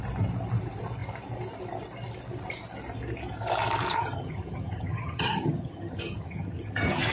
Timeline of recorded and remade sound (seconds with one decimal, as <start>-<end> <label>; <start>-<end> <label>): 0.0-3.9 recorded; 3.9-7.1 remade